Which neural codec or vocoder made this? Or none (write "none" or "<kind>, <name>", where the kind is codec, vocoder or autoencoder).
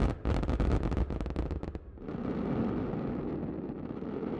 none